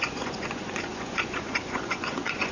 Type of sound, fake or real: fake